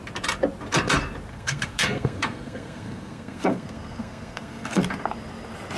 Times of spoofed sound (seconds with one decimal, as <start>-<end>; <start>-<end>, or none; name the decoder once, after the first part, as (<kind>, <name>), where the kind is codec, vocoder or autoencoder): 1.3-4.8 (codec, SNAC)